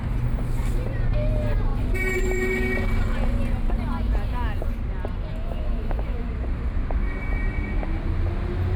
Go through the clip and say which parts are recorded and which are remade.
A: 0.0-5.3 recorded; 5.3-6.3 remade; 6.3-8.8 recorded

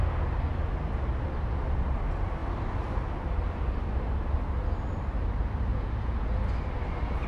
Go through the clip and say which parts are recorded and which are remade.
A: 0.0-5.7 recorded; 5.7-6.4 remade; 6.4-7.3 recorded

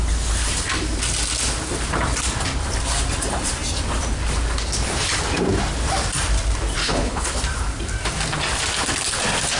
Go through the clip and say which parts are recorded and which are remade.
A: 0.0-6.8 recorded; 6.8-7.4 remade; 7.4-9.6 recorded

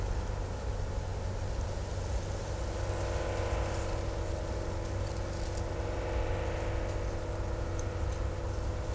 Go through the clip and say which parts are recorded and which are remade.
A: 0.0-8.9 recorded

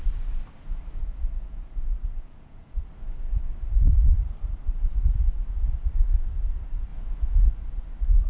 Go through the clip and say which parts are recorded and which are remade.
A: 0.0-1.0 recorded; 1.0-2.9 remade; 2.9-6.9 recorded; 6.9-7.5 remade; 7.5-8.3 recorded